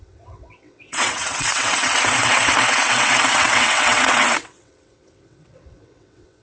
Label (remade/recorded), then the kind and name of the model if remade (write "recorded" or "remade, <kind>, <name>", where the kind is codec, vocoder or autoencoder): remade, vocoder, WaveNeXt